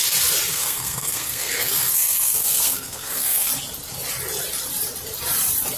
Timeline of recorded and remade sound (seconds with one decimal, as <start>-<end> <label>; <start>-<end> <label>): 0.0-0.5 recorded; 0.5-3.5 remade; 3.5-5.8 recorded